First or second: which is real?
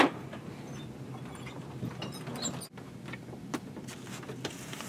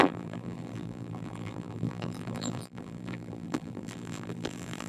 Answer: first